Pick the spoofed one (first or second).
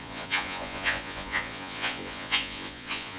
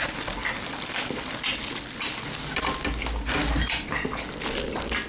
first